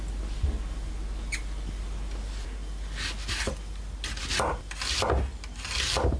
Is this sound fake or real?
real